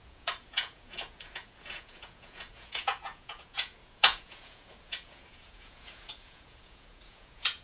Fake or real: fake